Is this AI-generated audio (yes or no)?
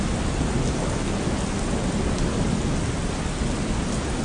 no